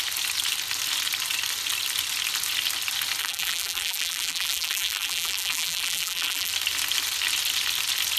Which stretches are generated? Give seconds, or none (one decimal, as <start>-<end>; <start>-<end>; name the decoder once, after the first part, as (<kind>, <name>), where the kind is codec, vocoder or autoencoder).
3.2-6.5 (vocoder, BigVGAN v2)